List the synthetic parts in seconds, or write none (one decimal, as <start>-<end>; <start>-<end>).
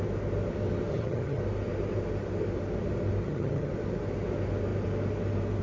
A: 0.9-1.4; 3.2-3.7